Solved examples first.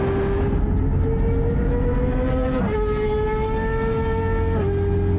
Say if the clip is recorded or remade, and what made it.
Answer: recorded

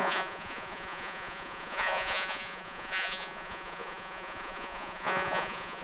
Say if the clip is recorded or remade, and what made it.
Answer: remade, vocoder, Vocos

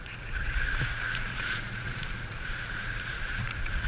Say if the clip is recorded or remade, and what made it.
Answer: remade, vocoder, Vocos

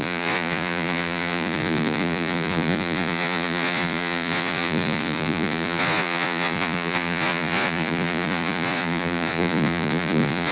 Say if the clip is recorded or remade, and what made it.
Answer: remade, vocoder, Vocos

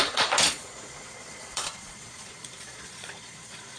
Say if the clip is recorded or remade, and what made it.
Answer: remade, vocoder, Vocos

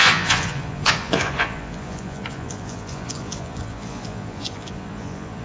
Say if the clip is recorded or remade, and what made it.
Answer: remade, vocoder, Vocos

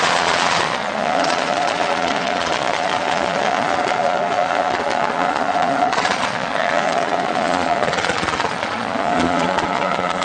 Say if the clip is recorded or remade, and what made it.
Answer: remade, vocoder, Vocos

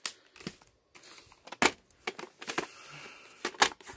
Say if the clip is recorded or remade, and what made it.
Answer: recorded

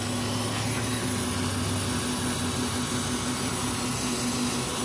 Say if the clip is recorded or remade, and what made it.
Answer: recorded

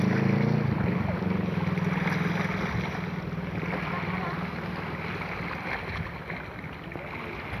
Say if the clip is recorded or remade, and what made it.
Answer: recorded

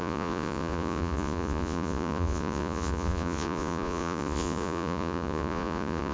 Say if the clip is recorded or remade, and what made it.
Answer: remade, vocoder, Vocos